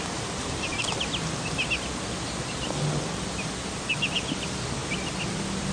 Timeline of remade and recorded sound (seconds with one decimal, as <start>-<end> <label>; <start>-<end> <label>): 0.0-5.7 recorded